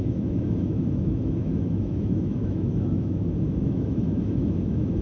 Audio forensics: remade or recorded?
remade